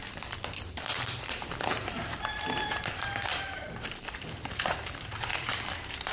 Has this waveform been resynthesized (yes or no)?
yes